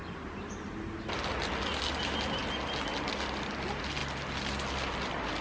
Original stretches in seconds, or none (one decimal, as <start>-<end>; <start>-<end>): 0.0-5.4